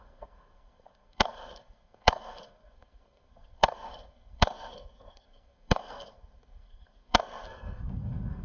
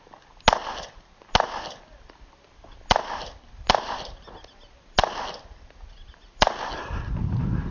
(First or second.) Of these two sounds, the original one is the second